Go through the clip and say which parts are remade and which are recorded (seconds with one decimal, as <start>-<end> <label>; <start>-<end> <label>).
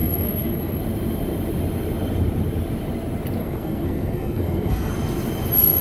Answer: 0.0-0.8 remade; 0.8-3.4 recorded; 3.4-4.9 remade; 4.9-5.8 recorded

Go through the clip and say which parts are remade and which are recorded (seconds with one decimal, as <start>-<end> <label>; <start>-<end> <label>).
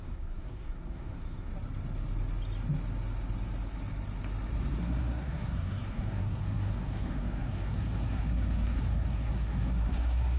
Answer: 0.0-1.5 remade; 1.5-4.8 recorded; 4.8-10.4 remade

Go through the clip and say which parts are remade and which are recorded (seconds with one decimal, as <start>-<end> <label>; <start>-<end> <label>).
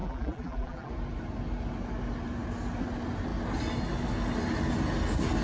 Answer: 0.0-0.9 remade; 0.9-5.4 recorded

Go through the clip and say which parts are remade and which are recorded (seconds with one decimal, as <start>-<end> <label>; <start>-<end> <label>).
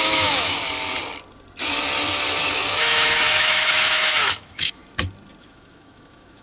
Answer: 0.0-0.6 remade; 0.6-2.5 recorded; 2.5-4.8 remade; 4.8-5.4 recorded; 5.4-6.4 remade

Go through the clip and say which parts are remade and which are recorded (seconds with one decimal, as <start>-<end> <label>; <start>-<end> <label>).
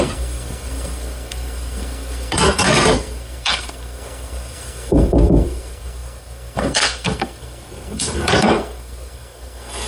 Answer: 0.0-9.9 remade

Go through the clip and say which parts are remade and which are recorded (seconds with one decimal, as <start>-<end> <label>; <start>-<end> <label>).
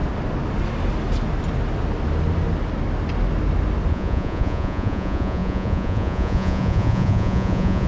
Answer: 0.0-3.9 recorded; 3.9-7.9 remade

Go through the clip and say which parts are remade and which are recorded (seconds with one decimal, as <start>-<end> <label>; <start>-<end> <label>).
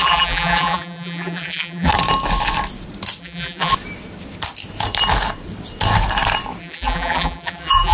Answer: 0.0-1.9 remade; 1.9-3.2 recorded; 3.2-3.7 remade; 3.7-6.6 recorded; 6.6-7.9 remade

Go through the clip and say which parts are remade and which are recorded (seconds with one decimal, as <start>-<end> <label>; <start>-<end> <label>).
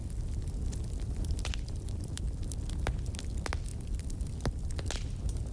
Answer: 0.0-2.6 remade; 2.6-3.7 recorded; 3.7-4.3 remade; 4.3-5.5 recorded